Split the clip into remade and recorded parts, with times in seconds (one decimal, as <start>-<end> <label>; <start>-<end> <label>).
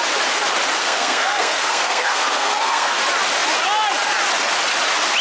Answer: 0.0-0.8 recorded; 0.8-3.0 remade; 3.0-5.2 recorded